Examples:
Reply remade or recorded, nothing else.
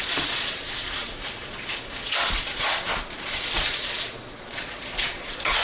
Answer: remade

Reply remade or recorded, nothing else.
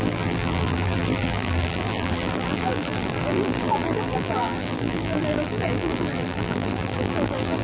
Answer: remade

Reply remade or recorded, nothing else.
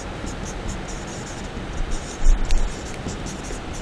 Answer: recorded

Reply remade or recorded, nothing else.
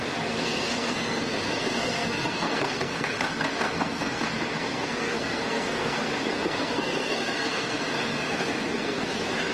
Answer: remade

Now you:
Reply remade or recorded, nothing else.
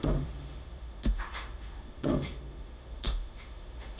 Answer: remade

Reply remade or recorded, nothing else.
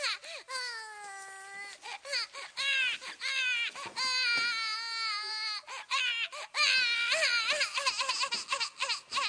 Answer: recorded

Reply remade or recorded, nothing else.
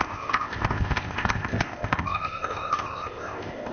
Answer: remade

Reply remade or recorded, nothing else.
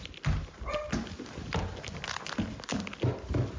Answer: recorded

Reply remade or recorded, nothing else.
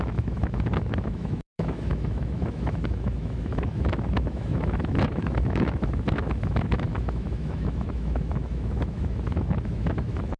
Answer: remade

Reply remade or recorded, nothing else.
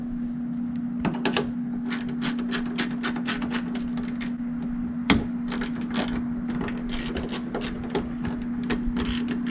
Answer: recorded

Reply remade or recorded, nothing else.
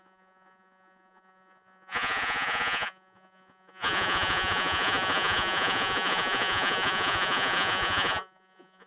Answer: remade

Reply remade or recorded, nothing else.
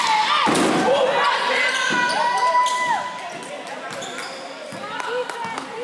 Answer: recorded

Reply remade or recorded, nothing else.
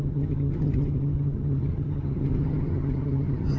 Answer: remade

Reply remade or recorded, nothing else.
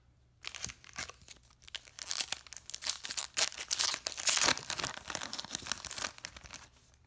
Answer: recorded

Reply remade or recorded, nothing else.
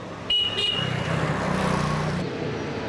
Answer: recorded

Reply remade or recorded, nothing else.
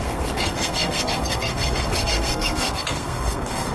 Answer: remade